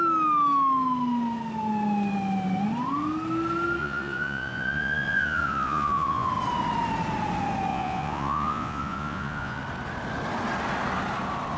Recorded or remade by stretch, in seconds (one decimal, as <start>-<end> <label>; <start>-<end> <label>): 0.0-3.8 recorded; 3.8-6.3 remade; 6.3-7.7 recorded; 7.7-9.6 remade; 9.6-11.6 recorded